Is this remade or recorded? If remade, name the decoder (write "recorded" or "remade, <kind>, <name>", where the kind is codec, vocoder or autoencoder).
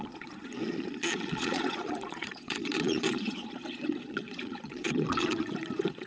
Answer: remade, vocoder, Vocos